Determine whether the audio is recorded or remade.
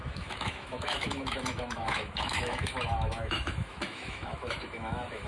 remade